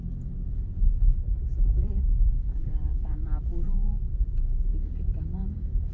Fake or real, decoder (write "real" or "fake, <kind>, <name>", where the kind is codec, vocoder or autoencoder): fake, vocoder, BigVGAN v2